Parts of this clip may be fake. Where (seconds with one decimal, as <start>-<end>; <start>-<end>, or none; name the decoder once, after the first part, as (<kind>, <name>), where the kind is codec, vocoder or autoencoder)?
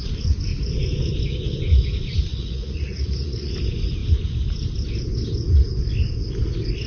2.3-3.5 (vocoder, Vocos)